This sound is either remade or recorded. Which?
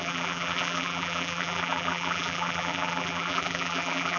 remade